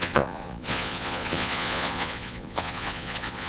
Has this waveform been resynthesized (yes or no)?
yes